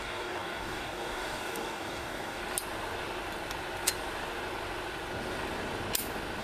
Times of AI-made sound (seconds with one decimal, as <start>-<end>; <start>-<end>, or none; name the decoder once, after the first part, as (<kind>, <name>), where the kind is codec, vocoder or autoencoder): 0.0-2.4 (codec, DAC)